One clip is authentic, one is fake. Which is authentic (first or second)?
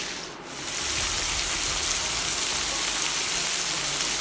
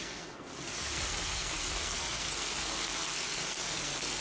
first